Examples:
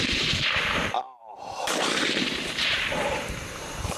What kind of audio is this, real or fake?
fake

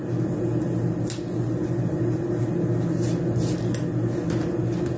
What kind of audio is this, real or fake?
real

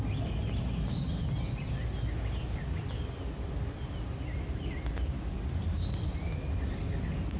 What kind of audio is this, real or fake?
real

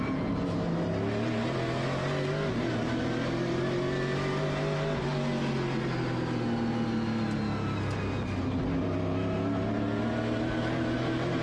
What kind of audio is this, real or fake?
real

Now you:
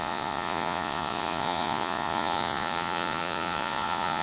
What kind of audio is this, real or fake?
fake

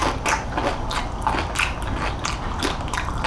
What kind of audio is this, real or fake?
real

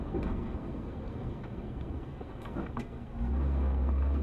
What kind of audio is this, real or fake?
fake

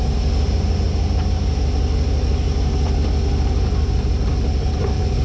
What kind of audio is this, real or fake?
real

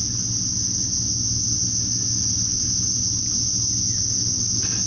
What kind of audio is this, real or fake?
real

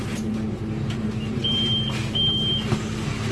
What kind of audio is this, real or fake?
real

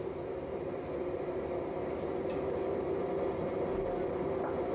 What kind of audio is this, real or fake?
real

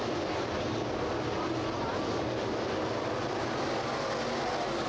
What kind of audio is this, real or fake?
real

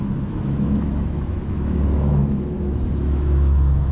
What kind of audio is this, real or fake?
fake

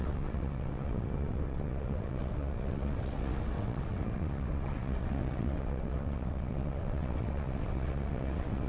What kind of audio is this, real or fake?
fake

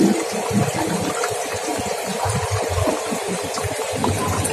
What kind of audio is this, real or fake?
fake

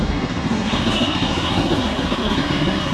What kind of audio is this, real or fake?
fake